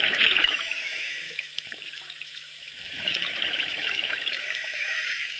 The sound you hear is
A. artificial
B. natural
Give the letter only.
A